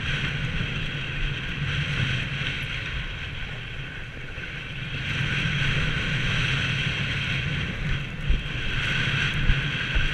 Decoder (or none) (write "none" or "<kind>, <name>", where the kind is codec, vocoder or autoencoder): none